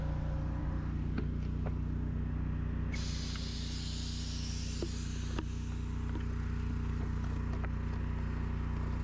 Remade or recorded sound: recorded